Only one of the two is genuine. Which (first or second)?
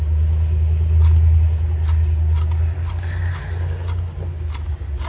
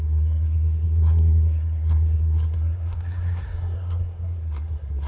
first